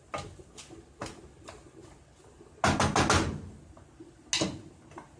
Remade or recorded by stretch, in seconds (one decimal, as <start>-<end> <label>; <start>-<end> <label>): 0.0-5.2 recorded